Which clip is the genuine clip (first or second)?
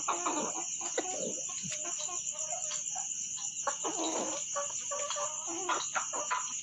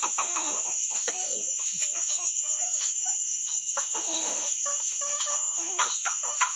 first